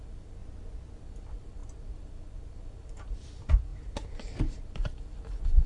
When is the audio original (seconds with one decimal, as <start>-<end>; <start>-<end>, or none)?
0.4-1.0